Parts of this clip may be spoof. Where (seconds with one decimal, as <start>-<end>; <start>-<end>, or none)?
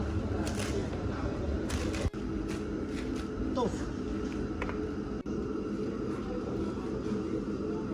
0.8-1.4